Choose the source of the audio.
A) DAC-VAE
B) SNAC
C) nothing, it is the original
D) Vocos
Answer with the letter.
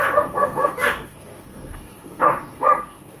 B